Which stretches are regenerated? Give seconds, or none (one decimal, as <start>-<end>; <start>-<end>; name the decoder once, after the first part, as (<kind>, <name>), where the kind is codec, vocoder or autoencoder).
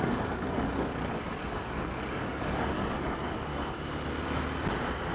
0.0-3.5 (codec, DAC)